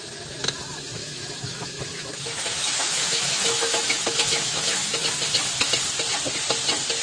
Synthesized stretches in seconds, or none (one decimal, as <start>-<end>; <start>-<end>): 1.0-5.1